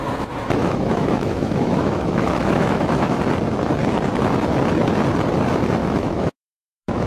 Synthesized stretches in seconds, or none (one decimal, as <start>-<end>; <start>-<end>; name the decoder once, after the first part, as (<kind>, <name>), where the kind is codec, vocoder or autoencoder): 0.6-3.2 (autoencoder, DAC-VAE); 5.8-7.1